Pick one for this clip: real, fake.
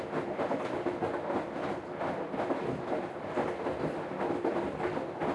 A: real